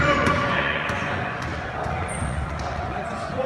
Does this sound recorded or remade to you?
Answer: remade